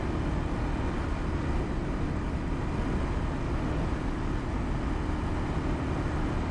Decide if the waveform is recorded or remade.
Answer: recorded